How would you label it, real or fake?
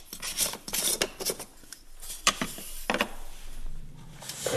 real